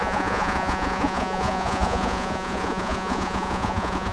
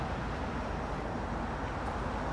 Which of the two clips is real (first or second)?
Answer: second